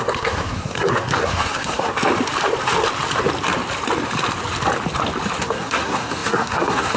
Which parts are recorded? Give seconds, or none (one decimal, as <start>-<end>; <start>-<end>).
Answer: 1.9-5.4